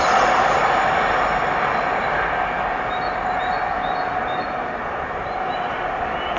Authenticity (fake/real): real